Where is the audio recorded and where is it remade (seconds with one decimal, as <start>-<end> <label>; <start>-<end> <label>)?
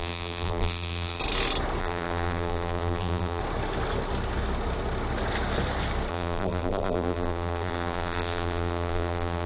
0.0-1.2 remade; 1.2-1.8 recorded; 1.8-3.4 remade; 3.4-6.1 recorded; 6.1-9.5 remade